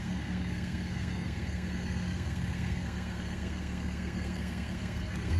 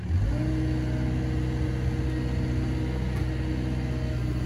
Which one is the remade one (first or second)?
first